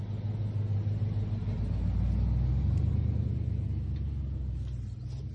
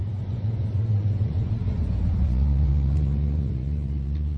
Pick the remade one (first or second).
second